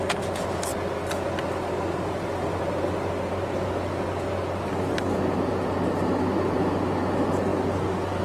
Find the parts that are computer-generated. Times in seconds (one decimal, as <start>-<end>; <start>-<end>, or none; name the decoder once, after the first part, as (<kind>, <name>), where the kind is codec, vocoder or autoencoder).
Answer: none